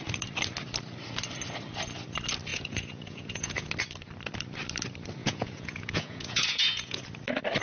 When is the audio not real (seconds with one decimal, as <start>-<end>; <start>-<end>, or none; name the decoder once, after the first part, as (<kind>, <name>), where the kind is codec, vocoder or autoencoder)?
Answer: 2.5-3.7 (vocoder, Vocos); 5.2-7.0